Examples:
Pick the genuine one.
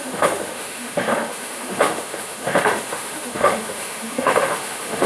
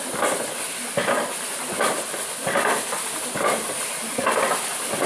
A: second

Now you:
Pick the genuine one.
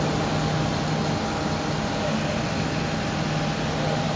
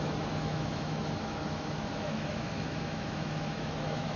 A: first